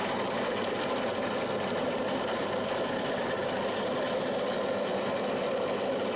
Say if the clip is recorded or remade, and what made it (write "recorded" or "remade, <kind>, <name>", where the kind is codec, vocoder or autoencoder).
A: recorded